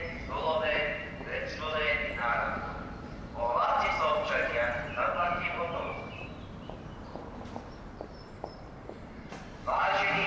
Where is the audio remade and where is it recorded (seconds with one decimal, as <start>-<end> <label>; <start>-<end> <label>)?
0.0-10.3 remade